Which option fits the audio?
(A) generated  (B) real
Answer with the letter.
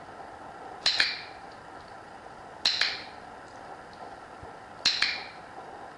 B